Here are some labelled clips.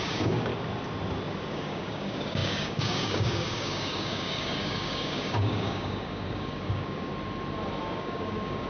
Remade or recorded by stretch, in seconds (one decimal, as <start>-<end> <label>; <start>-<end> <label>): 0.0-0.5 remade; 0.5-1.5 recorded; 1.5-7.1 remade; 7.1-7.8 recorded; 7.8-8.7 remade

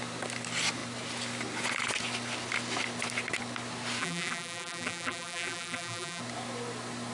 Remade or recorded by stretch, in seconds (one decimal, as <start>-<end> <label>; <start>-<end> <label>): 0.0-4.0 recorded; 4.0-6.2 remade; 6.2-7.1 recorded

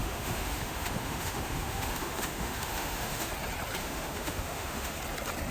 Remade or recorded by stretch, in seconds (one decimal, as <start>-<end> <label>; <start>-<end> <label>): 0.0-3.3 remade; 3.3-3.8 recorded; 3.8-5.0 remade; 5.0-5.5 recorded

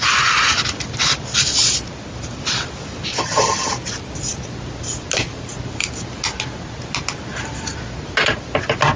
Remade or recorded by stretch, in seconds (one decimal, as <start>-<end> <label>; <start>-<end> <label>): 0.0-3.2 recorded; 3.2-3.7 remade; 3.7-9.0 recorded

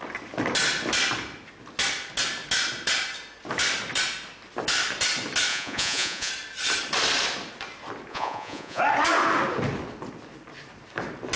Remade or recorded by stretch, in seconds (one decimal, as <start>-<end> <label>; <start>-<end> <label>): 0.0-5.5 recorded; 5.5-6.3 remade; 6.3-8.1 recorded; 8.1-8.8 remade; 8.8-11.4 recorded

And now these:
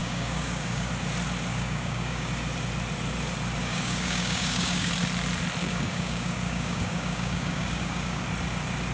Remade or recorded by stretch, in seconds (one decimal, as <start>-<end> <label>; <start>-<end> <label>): 0.0-0.9 remade; 0.9-1.5 recorded; 1.5-2.3 remade; 2.3-3.6 recorded; 3.6-4.9 remade; 4.9-5.6 recorded; 5.6-8.2 remade; 8.2-8.9 recorded

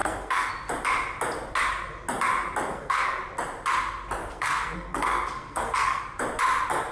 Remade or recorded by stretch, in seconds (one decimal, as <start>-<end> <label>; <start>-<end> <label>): 0.0-0.5 remade; 0.5-2.7 recorded; 2.7-3.2 remade; 3.2-4.2 recorded; 4.2-6.0 remade; 6.0-6.9 recorded

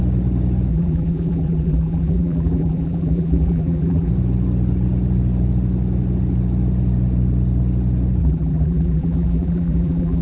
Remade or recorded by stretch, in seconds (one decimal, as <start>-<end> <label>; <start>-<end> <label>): 0.0-0.7 recorded; 0.7-4.1 remade; 4.1-8.2 recorded; 8.2-10.2 remade